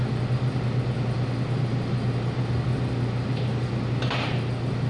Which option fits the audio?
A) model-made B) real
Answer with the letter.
B